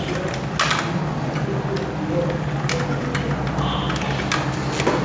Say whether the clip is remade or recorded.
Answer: recorded